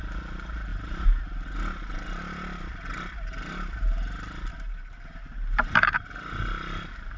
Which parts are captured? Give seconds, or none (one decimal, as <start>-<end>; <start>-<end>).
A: 0.0-7.2